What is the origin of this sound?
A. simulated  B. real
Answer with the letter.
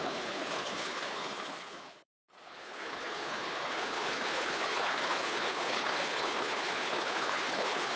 A